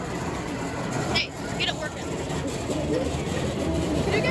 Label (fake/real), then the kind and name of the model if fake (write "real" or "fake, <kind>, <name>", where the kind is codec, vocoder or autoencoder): fake, vocoder, BigVGAN v2